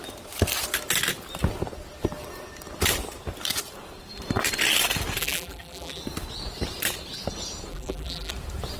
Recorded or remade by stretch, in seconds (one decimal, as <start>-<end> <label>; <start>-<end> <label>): 0.0-5.2 recorded; 5.2-6.0 remade; 6.0-7.7 recorded; 7.7-8.3 remade; 8.3-8.8 recorded